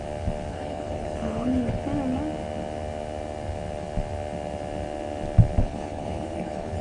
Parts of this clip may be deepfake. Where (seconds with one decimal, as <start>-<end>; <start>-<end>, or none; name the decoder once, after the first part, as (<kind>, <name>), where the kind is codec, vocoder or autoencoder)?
0.5-1.8 (codec, HILCodec); 5.6-6.8